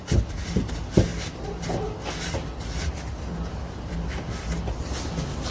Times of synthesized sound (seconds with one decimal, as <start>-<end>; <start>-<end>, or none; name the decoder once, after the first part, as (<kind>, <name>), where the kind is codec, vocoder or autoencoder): none